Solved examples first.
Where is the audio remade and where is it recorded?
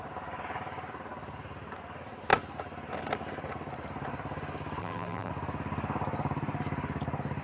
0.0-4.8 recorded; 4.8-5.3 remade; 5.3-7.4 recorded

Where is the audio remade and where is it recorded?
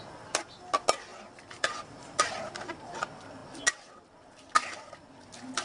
0.0-1.1 recorded; 1.1-2.9 remade; 2.9-5.6 recorded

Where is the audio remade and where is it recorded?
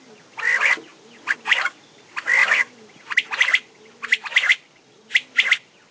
0.0-2.4 recorded; 2.4-3.7 remade; 3.7-5.9 recorded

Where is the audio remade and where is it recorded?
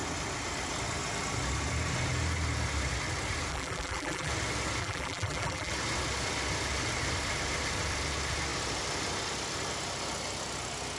0.0-3.5 recorded; 3.5-4.3 remade; 4.3-4.8 recorded; 4.8-5.7 remade; 5.7-11.0 recorded